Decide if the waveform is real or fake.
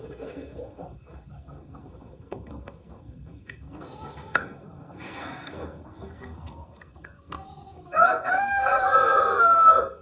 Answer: fake